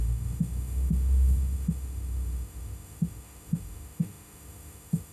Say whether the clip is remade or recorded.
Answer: remade